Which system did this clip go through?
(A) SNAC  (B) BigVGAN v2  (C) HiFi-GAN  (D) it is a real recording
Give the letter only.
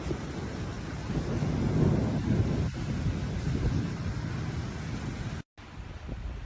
D